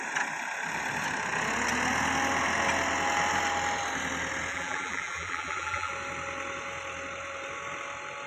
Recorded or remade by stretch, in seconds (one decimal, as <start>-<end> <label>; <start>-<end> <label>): 0.0-4.5 recorded; 4.5-5.9 remade; 5.9-8.3 recorded